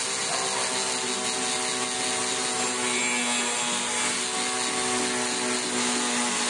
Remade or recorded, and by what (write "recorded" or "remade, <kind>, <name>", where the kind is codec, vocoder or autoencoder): recorded